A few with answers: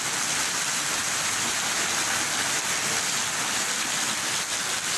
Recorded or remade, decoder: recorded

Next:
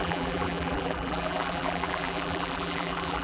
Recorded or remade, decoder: remade, vocoder, BigVGAN v2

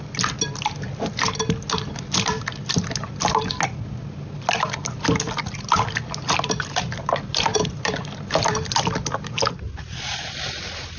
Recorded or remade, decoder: recorded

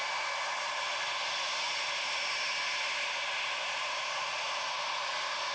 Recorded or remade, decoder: recorded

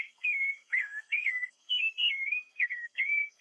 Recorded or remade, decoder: remade, codec, SNAC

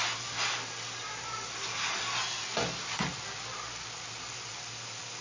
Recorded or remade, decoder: recorded